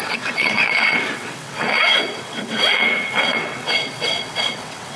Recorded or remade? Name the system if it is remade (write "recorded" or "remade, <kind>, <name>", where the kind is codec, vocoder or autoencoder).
remade, vocoder, WaveNeXt